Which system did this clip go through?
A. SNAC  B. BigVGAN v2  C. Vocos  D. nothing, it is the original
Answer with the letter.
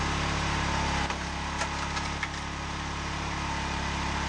D